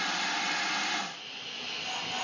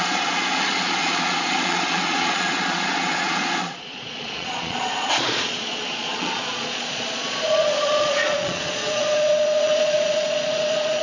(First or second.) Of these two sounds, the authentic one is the first